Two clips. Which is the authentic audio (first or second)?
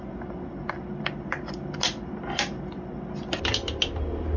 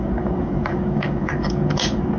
first